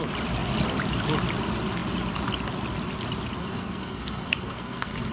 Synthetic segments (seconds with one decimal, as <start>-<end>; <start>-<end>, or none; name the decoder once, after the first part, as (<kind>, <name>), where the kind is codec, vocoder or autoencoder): 3.4-5.1 (codec, SNAC)